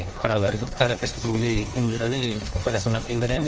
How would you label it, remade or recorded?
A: remade